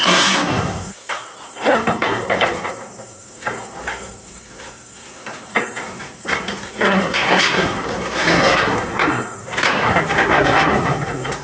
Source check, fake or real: fake